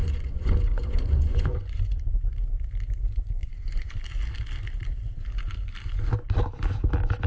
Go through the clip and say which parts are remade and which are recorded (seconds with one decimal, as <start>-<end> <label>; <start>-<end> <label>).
0.0-2.1 remade; 2.1-3.4 recorded; 3.4-3.9 remade; 3.9-7.3 recorded